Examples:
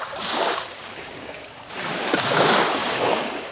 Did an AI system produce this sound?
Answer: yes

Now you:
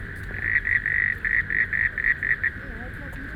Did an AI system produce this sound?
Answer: no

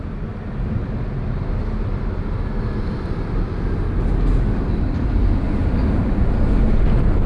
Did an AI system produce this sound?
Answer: no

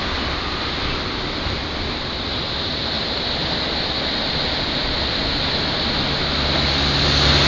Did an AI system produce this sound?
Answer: no